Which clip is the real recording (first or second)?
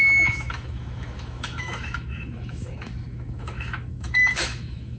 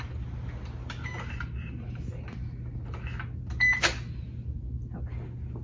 second